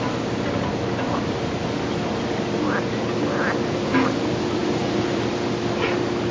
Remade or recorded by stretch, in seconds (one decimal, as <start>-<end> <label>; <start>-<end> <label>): 0.0-4.6 recorded; 4.6-5.3 remade; 5.3-6.3 recorded